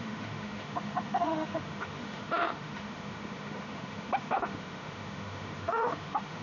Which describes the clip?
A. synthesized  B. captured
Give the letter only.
A